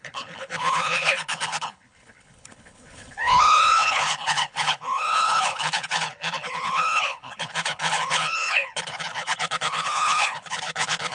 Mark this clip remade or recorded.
remade